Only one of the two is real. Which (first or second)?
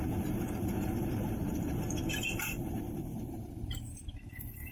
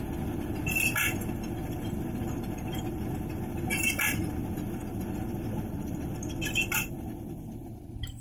second